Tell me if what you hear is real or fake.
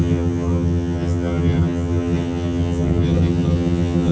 fake